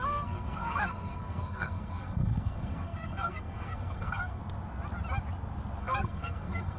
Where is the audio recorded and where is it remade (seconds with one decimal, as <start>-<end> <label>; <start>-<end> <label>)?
0.0-4.4 remade; 4.4-5.8 recorded; 5.8-6.8 remade